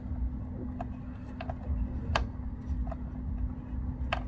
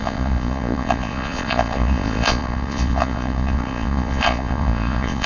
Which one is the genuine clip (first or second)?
first